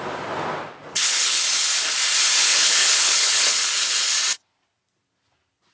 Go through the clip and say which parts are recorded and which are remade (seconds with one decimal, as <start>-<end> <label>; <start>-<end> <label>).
0.0-0.9 recorded; 0.9-1.4 remade; 1.4-2.4 recorded; 2.4-4.1 remade; 4.1-5.7 recorded